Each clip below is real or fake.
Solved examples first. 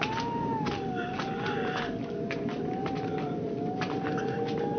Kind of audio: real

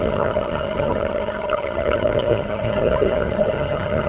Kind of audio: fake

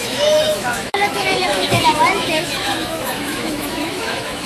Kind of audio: fake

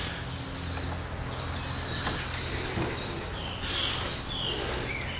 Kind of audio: real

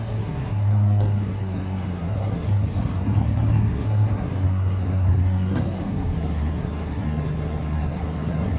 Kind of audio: fake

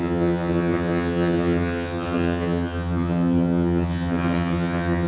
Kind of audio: fake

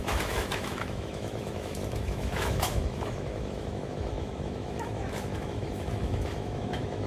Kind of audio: fake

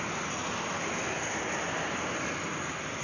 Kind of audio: real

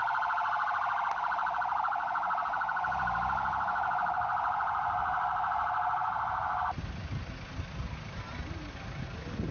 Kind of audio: real